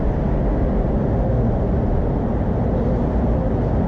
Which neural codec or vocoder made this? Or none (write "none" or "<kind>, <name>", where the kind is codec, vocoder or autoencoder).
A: none